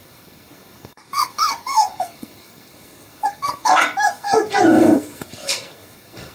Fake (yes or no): yes